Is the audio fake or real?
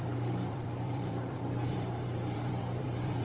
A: fake